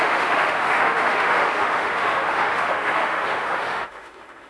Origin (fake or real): fake